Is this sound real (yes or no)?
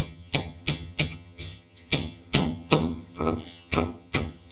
no